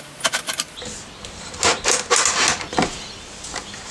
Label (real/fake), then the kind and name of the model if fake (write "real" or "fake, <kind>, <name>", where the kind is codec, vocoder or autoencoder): real